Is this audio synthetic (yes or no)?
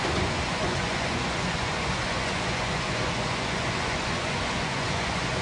yes